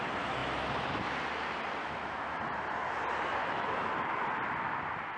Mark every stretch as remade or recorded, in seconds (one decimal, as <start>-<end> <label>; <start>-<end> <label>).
0.0-1.8 recorded; 1.8-2.4 remade; 2.4-3.4 recorded; 3.4-3.9 remade; 3.9-5.2 recorded